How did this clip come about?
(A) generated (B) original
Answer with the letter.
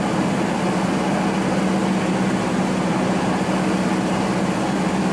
B